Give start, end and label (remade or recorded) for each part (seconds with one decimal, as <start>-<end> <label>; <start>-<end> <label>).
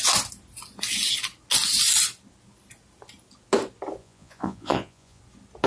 0.0-4.0 recorded; 4.0-5.2 remade; 5.2-5.7 recorded